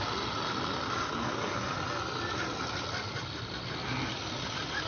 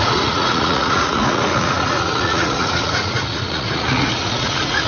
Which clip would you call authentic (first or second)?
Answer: first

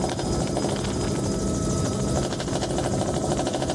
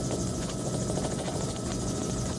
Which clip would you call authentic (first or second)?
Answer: first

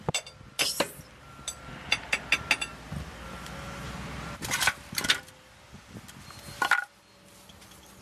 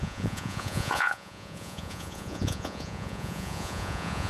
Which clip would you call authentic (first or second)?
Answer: first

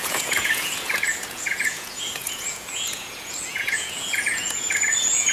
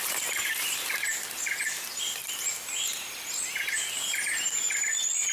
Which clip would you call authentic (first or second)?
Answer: second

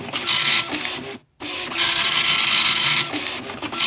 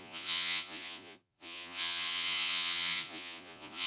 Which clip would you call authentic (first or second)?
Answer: first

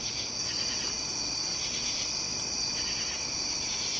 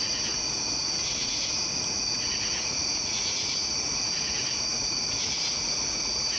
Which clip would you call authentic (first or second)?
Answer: first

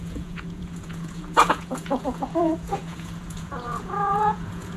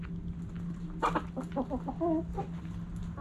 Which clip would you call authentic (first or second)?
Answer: second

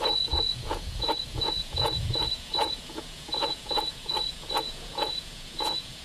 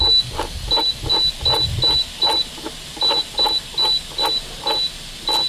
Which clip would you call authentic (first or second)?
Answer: second